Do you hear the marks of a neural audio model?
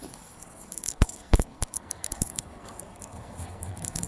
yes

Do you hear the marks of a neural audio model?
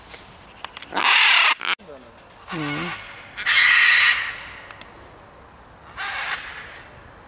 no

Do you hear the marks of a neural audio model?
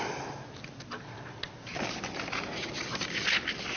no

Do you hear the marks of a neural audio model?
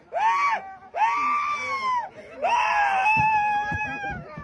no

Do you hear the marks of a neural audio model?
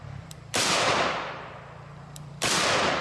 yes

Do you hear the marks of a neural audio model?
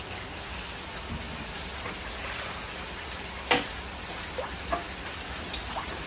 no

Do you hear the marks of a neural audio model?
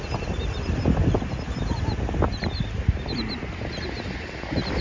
no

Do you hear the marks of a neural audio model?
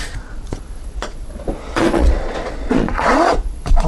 yes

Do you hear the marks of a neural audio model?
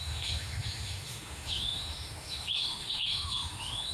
yes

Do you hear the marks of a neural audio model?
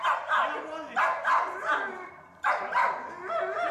no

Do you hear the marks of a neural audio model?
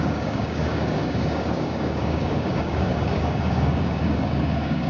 yes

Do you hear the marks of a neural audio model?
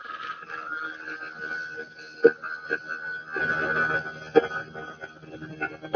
no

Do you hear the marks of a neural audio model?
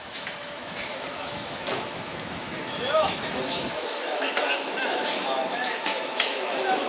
yes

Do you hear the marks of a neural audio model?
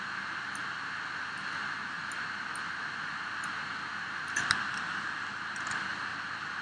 no